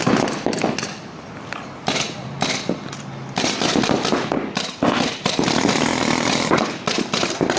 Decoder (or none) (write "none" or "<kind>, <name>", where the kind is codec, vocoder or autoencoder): vocoder, BigVGAN v2